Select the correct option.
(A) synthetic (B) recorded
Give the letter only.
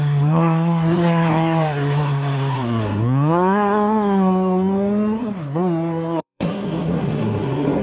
A